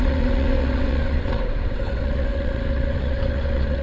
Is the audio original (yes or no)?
no